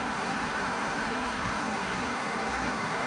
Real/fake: fake